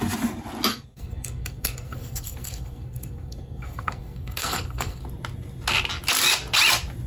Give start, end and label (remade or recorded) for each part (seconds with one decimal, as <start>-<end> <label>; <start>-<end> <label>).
0.0-0.7 recorded; 0.7-5.0 remade; 5.0-7.1 recorded

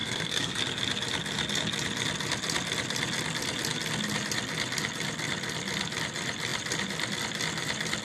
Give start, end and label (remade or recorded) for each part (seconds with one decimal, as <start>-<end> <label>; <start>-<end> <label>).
0.0-0.6 remade; 0.6-8.0 recorded

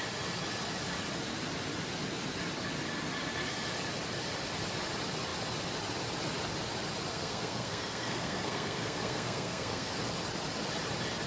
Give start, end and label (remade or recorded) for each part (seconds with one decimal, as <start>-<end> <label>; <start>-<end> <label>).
0.0-7.1 recorded; 7.1-9.9 remade; 9.9-11.3 recorded

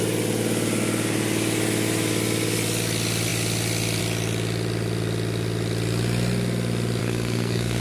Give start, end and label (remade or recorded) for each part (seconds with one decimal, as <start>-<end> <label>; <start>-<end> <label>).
0.0-7.0 recorded; 7.0-7.8 remade

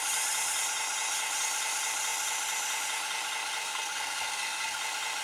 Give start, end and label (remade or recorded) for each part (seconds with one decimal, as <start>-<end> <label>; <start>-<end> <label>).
0.0-3.6 recorded; 3.6-4.8 remade; 4.8-5.2 recorded

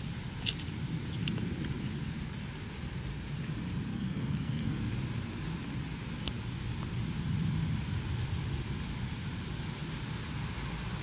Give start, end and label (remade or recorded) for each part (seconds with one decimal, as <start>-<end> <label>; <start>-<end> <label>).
0.0-3.9 recorded; 3.9-4.9 remade; 4.9-11.0 recorded